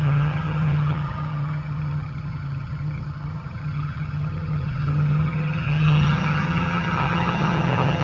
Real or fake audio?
fake